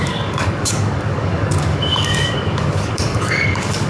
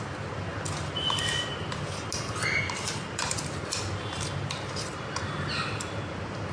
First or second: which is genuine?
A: second